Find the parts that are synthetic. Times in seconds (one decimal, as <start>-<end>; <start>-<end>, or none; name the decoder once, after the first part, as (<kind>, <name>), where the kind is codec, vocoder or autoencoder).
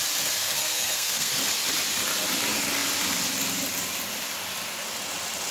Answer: 0.4-1.3 (codec, SNAC)